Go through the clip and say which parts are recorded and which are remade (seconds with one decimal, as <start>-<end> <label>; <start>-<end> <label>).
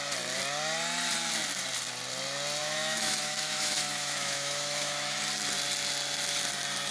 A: 0.0-2.6 recorded; 2.6-5.2 remade; 5.2-6.9 recorded